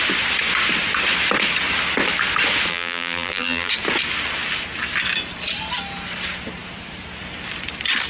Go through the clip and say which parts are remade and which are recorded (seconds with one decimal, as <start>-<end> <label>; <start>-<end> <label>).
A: 0.0-2.7 recorded; 2.7-3.7 remade; 3.7-8.1 recorded